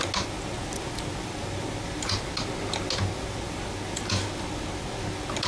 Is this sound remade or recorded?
recorded